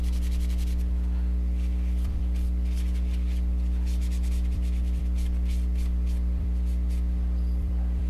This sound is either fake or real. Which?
fake